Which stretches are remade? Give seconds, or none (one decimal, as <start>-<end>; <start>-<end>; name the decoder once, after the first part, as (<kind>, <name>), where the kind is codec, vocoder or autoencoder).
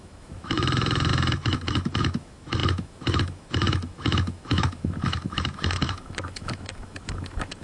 0.0-7.6 (autoencoder, DAC-VAE)